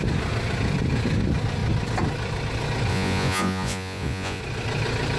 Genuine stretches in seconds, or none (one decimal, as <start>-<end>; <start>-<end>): 0.0-2.9; 4.4-5.2